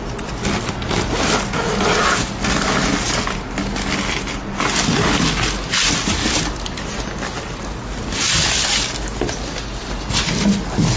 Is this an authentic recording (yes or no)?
yes